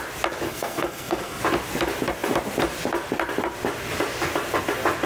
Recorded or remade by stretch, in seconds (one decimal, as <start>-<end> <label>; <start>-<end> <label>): 0.0-0.5 recorded; 0.5-1.4 remade; 1.4-5.1 recorded